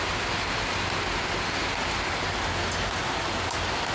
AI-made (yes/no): no